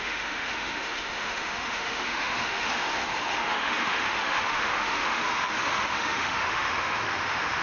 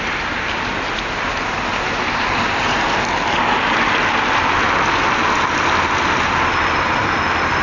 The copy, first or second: first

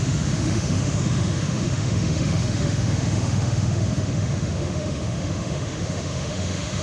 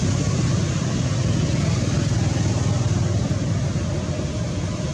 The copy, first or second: first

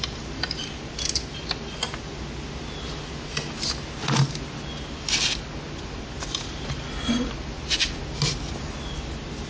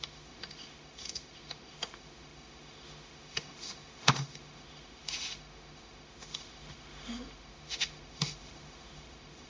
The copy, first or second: second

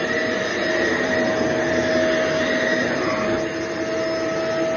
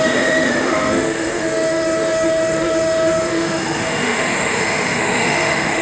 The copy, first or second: second